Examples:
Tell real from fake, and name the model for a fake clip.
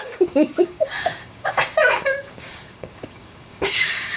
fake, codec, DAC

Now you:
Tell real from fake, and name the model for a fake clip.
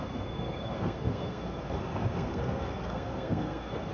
fake, codec, SNAC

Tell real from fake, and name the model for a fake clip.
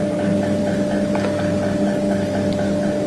real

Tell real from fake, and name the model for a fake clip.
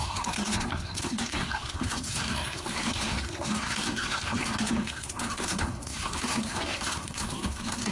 fake, codec, SNAC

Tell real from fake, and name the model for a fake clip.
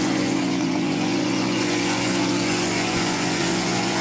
fake, vocoder, Vocos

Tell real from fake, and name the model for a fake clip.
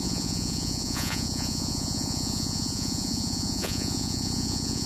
fake, vocoder, Vocos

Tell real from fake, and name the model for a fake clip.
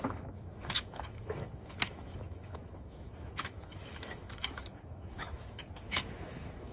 fake, autoencoder, DAC-VAE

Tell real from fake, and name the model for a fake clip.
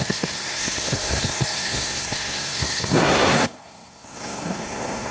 fake, codec, SNAC